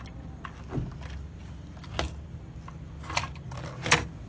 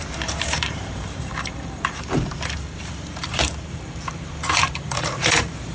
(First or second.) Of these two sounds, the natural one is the first